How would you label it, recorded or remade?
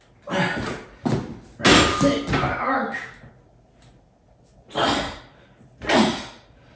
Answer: recorded